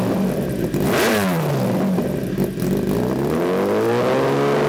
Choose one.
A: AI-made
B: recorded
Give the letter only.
B